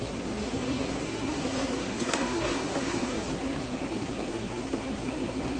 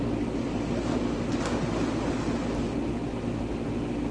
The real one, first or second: second